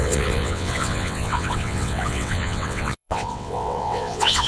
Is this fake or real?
fake